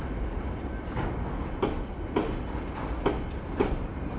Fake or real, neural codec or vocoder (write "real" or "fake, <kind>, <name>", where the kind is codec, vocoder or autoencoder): real